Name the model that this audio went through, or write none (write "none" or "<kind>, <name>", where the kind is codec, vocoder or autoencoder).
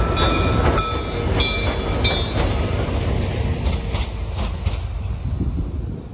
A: none